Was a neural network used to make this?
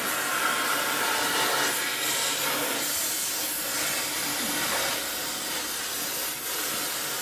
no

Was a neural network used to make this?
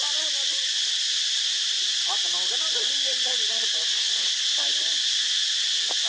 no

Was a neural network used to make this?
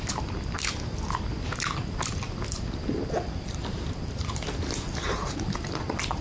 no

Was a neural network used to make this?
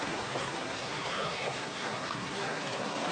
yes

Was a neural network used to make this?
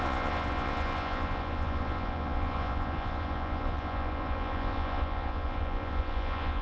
yes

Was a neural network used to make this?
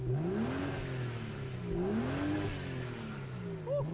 no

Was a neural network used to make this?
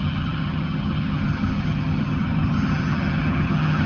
yes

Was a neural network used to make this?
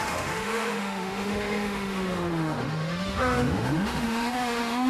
yes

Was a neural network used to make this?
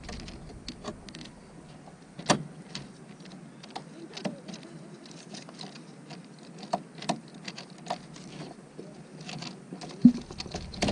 no